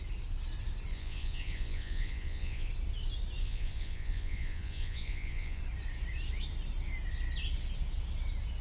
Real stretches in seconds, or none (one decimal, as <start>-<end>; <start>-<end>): 0.0-0.9; 2.7-3.4; 5.6-8.6